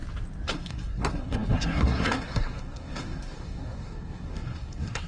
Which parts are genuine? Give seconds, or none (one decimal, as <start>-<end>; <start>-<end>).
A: 0.0-0.5